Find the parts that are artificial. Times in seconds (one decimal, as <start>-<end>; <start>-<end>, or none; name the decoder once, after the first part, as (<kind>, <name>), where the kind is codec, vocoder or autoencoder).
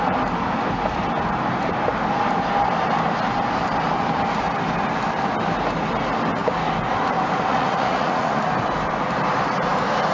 7.5-8.4 (vocoder, Vocos)